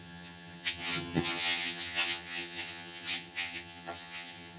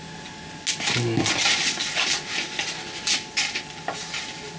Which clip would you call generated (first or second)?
first